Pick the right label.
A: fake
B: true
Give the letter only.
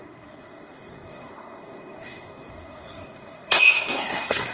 A